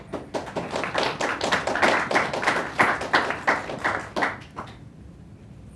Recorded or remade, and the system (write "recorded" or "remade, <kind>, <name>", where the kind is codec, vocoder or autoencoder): recorded